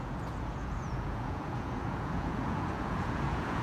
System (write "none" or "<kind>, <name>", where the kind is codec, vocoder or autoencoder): vocoder, Vocos